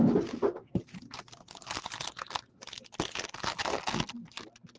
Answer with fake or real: real